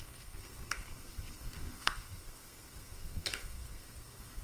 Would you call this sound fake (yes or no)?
yes